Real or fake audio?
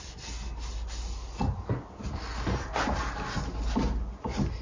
real